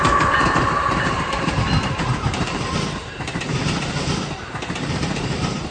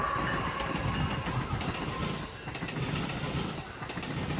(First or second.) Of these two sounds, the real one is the second